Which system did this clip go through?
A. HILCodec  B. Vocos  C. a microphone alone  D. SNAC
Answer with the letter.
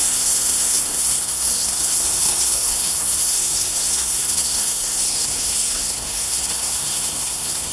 D